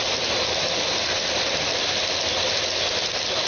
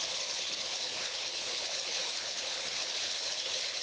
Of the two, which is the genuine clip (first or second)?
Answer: first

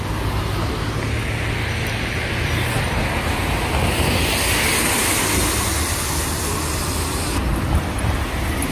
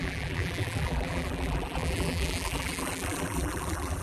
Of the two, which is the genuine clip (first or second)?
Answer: first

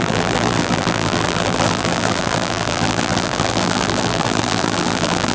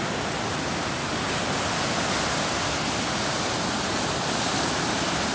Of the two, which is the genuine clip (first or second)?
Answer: second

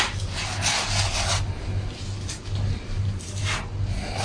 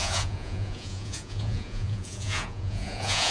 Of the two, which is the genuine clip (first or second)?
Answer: first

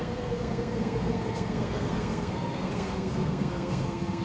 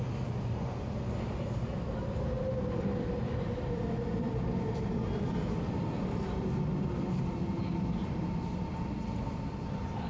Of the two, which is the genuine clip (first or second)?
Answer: second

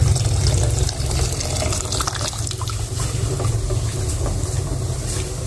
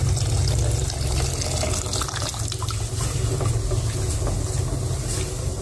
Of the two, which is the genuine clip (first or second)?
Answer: second